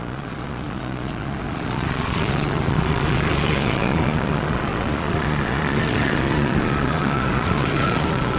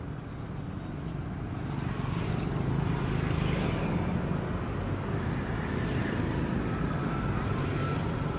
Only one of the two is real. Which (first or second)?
second